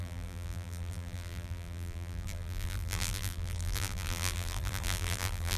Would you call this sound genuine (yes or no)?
no